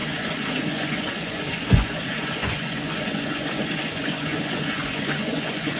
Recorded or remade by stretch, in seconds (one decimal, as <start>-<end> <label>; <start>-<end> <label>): 0.0-5.8 remade